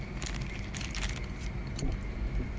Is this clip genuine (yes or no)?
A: yes